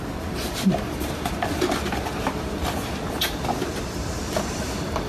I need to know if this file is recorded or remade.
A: remade